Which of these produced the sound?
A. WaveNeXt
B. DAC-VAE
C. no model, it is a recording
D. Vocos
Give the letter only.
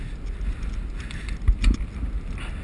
C